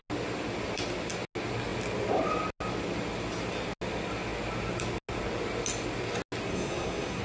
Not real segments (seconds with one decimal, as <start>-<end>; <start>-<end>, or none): 6.5-7.2